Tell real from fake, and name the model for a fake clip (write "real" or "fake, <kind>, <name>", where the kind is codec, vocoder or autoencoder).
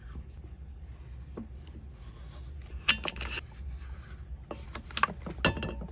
real